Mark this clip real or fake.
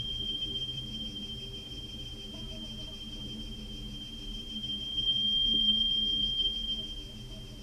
fake